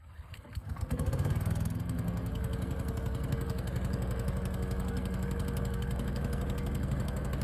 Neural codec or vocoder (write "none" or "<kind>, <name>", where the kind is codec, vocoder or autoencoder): codec, SNAC